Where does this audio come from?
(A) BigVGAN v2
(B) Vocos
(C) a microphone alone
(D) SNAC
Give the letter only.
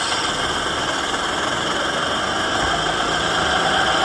C